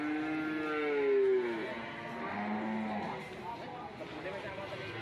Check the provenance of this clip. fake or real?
real